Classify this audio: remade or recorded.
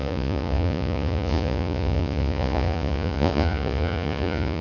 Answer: remade